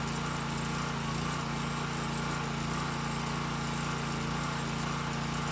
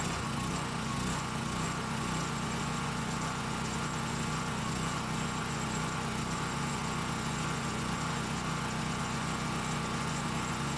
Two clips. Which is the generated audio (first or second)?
second